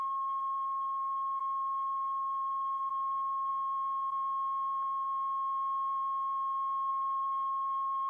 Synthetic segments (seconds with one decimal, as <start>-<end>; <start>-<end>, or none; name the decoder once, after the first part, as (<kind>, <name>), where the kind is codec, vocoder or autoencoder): 0.0-3.5 (autoencoder, DAC-VAE); 6.9-8.1